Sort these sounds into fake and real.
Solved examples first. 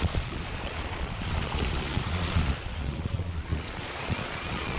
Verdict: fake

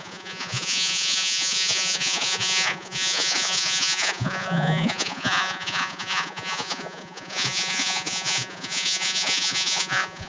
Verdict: fake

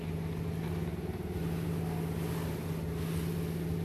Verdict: real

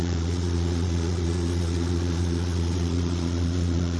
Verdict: fake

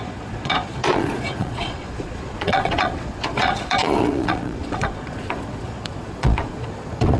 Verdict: fake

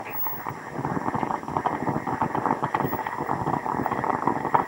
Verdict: real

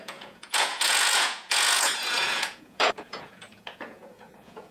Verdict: fake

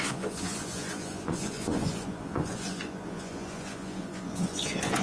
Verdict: fake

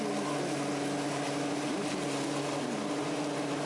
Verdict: real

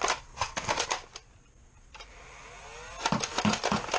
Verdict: real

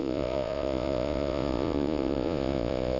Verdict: fake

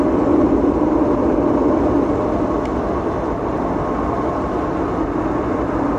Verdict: real